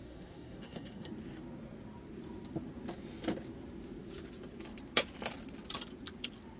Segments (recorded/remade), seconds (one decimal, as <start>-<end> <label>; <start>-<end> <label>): 0.0-1.1 remade; 1.1-6.6 recorded